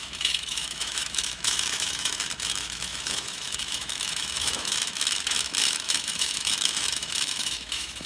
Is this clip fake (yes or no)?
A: yes